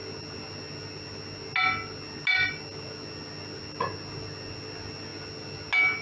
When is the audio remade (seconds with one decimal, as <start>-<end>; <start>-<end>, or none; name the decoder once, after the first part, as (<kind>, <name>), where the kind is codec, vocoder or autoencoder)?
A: none